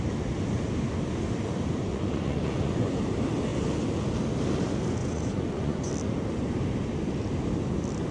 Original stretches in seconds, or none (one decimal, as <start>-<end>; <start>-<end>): 0.0-1.9; 2.9-5.0; 5.9-8.1